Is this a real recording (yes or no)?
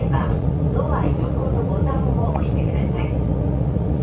no